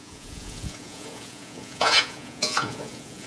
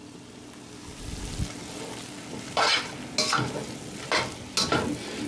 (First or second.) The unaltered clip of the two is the second